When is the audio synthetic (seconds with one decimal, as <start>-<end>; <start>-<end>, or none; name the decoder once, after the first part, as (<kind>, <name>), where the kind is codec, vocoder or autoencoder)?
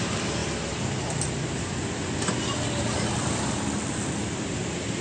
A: none